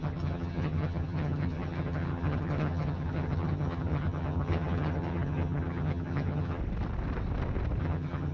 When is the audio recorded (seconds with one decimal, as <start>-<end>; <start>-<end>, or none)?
6.6-7.8

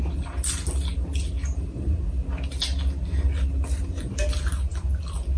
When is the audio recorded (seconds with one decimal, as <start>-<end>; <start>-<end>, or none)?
0.0-5.4

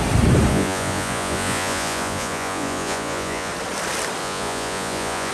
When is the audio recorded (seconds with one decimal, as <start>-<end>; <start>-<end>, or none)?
0.0-0.5; 3.5-4.2

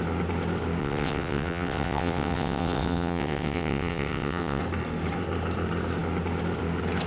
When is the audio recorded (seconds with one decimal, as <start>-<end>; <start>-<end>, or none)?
0.0-0.8; 4.6-7.1

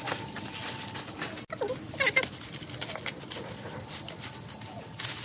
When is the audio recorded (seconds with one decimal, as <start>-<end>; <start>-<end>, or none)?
0.0-5.2

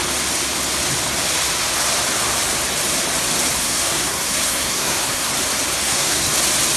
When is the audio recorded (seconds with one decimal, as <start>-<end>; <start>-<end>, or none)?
0.0-3.6; 5.3-5.8; 6.3-6.8

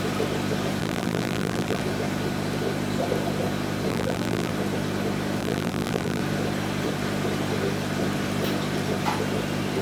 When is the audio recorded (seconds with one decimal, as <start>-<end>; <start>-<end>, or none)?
0.0-0.8; 1.8-3.9; 4.5-5.4; 6.2-9.8

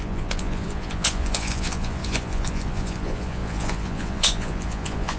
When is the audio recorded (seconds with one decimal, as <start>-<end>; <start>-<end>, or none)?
none